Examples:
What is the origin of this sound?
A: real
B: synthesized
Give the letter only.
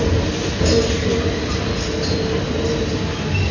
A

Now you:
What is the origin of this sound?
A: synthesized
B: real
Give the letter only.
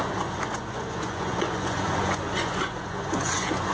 A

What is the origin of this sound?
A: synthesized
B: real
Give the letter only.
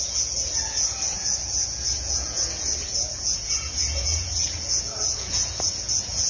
A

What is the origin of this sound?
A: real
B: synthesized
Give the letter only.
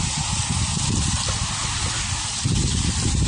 A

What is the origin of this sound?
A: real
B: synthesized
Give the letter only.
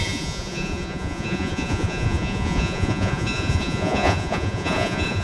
B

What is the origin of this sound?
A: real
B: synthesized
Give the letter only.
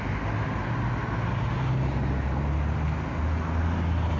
A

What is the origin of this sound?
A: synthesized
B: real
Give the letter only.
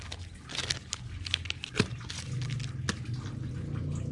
B